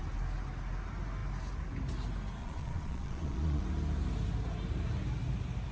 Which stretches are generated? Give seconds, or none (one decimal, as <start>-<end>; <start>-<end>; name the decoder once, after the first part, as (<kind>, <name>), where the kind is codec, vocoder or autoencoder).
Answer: 2.4-3.6 (vocoder, Vocos)